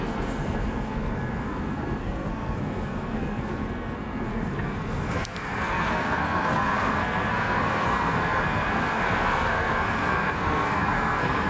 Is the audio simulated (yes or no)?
yes